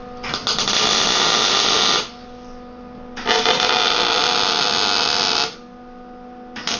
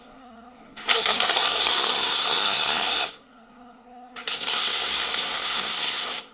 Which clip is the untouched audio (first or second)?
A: first